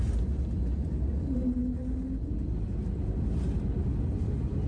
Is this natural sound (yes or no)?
yes